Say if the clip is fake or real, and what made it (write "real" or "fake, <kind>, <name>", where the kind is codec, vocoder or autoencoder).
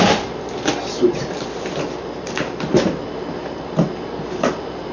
fake, vocoder, BigVGAN v2